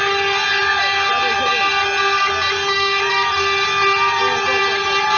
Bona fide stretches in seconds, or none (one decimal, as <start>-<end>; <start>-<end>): 0.0-5.2